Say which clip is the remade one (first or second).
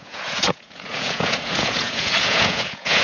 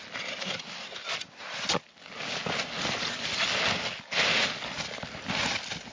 first